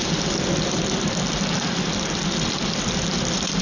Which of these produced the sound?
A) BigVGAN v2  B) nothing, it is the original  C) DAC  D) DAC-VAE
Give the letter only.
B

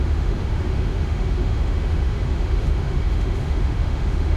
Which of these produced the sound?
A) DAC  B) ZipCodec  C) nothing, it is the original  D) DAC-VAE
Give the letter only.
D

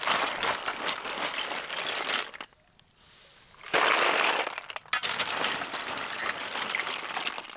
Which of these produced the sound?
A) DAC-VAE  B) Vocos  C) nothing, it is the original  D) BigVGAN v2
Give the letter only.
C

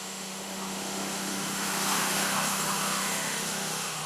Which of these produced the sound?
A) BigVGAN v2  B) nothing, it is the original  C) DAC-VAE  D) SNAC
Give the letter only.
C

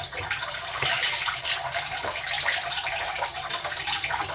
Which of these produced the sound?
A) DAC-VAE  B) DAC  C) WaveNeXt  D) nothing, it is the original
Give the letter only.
D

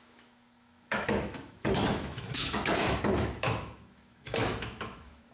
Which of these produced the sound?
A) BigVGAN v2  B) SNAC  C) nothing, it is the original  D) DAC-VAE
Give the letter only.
D